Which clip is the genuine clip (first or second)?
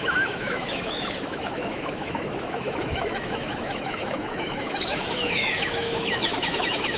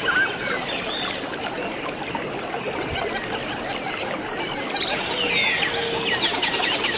second